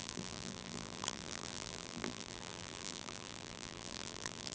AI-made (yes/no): yes